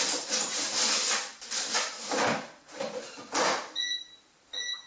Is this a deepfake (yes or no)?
no